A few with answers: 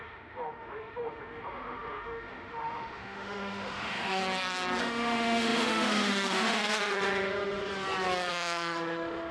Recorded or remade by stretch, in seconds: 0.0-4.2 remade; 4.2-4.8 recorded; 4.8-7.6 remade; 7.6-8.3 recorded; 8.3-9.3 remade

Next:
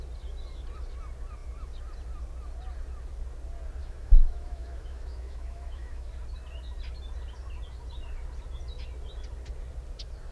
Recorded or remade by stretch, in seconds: 0.0-3.8 recorded; 3.8-6.1 remade; 6.1-10.3 recorded

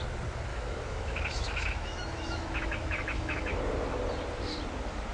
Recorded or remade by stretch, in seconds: 0.0-0.5 recorded; 0.5-3.6 remade; 3.6-5.1 recorded

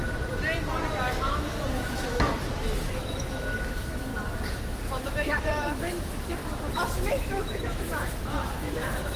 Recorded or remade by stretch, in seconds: 0.0-1.1 recorded; 1.1-4.1 remade; 4.1-4.7 recorded; 4.7-9.2 remade

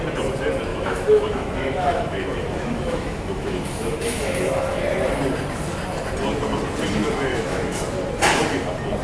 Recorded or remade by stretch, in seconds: 0.0-0.7 recorded; 0.7-4.8 remade; 4.8-7.3 recorded; 7.3-7.9 remade; 7.9-9.0 recorded

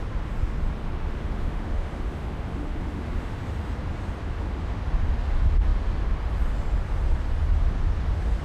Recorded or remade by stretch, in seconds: 0.0-0.8 recorded; 0.8-3.4 remade; 3.4-4.2 recorded; 4.2-4.8 remade; 4.8-8.4 recorded

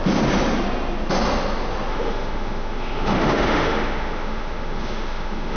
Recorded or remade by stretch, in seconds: 0.0-1.9 recorded; 1.9-5.6 remade